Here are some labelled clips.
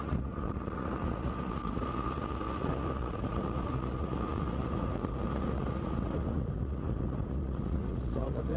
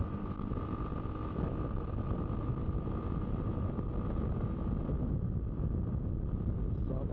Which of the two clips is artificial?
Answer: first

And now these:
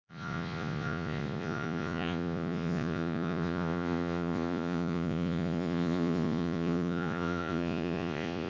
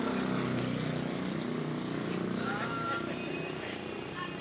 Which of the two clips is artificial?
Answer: first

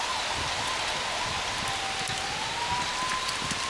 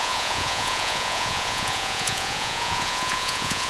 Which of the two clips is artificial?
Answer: second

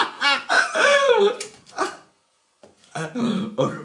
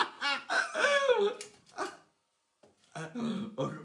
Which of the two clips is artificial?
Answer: first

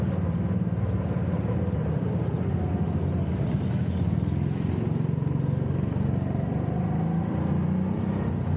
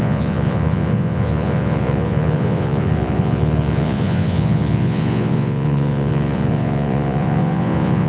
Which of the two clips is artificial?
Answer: second